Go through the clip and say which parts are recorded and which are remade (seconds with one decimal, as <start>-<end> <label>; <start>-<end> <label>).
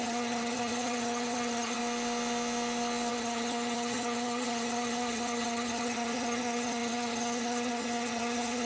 0.0-1.8 remade; 1.8-3.1 recorded; 3.1-8.7 remade